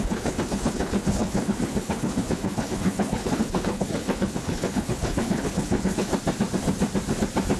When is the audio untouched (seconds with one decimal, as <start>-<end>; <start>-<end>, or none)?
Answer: 6.1-7.6